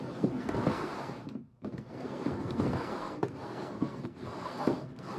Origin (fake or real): fake